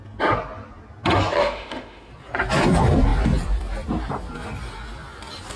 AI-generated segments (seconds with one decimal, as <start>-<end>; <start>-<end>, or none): 1.4-2.1